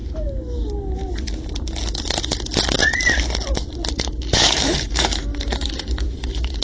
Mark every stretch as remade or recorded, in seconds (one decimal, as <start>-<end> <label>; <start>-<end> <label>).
0.0-3.9 recorded; 3.9-6.6 remade